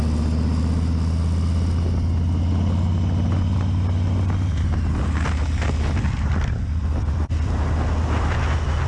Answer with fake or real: real